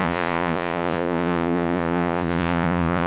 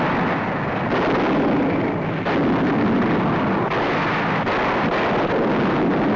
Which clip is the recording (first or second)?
second